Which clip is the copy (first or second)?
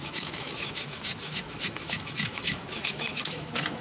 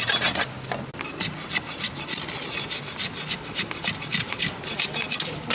first